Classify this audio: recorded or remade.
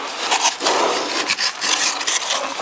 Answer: recorded